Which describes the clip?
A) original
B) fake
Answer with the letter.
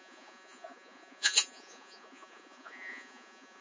B